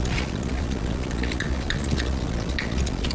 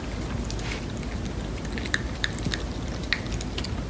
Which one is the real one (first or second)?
second